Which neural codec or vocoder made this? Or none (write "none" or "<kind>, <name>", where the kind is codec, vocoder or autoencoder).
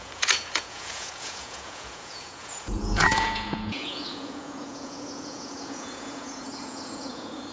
vocoder, Vocos